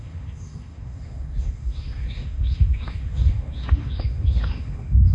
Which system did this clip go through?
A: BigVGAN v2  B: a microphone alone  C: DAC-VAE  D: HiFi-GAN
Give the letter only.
C